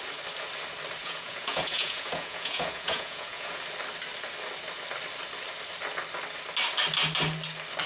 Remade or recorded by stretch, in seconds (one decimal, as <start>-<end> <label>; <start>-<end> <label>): 0.0-1.0 recorded; 1.0-3.6 remade; 3.6-7.9 recorded